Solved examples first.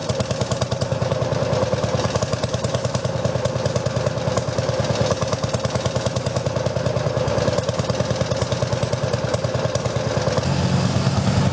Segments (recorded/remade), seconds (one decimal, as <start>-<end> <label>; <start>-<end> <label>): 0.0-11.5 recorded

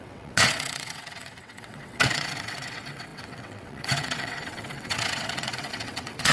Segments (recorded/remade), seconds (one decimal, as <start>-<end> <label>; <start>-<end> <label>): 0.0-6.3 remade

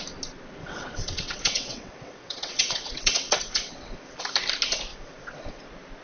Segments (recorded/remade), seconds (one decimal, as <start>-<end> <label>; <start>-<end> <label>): 0.0-0.6 recorded; 0.6-4.2 remade; 4.2-4.9 recorded; 4.9-5.6 remade; 5.6-6.0 recorded

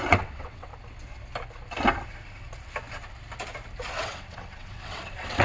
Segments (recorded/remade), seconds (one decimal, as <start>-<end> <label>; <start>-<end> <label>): 0.0-0.7 remade; 0.7-3.9 recorded; 3.9-5.4 remade

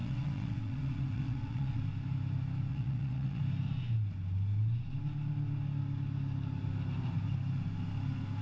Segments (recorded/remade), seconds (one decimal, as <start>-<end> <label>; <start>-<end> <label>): 0.0-1.8 remade; 1.8-2.7 recorded; 2.7-3.4 remade; 3.4-8.4 recorded

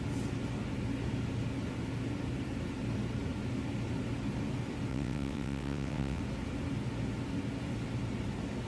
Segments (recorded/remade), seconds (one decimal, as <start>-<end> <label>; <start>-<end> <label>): 0.0-4.9 recorded; 4.9-6.2 remade; 6.2-8.7 recorded